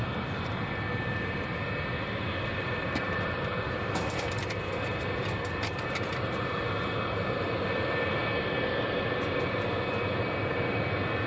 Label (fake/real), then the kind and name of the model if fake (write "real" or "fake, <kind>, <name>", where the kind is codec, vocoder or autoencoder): real